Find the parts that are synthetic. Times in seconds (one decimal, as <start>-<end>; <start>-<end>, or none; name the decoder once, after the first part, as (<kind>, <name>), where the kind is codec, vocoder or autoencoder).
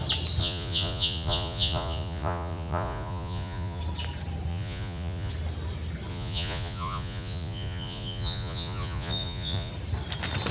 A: 0.4-3.8 (vocoder, Vocos); 4.5-5.3; 6.1-9.7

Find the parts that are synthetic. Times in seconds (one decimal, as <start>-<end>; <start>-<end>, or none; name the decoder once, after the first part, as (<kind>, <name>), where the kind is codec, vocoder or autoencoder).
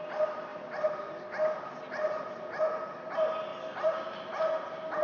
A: none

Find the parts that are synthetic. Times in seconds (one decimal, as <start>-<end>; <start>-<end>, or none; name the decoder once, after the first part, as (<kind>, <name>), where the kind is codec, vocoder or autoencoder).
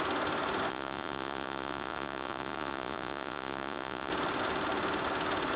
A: 0.7-4.1 (vocoder, Vocos)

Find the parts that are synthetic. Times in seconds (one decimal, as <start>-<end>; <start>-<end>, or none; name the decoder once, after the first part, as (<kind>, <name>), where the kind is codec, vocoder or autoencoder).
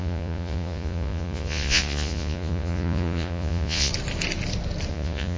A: 0.0-3.9 (vocoder, Vocos); 4.9-5.4